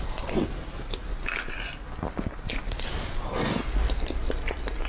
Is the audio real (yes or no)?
yes